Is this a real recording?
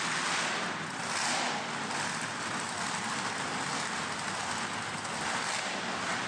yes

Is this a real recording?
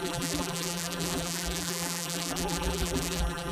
no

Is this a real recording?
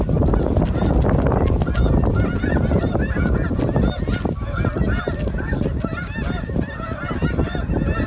yes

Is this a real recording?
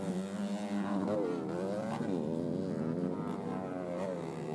yes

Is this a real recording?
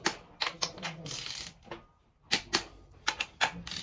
yes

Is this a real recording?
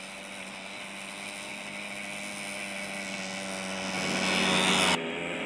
yes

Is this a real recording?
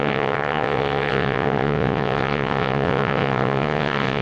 no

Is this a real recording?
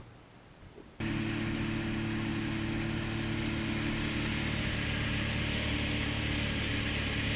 yes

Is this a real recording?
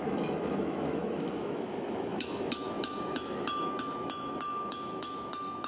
no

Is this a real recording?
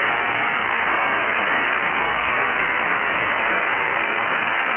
no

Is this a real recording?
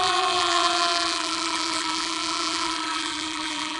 no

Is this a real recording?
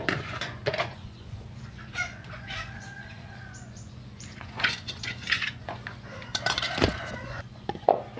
no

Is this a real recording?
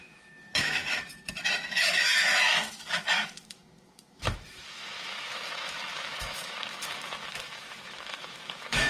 no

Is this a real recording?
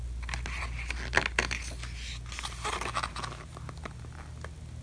yes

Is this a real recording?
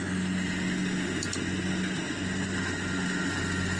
yes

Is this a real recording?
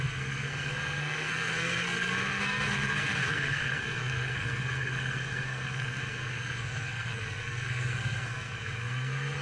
no